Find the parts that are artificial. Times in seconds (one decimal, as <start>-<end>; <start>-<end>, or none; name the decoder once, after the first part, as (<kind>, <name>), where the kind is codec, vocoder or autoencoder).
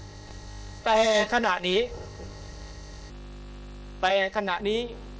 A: 0.0-3.1 (codec, ZipCodec); 4.1-4.6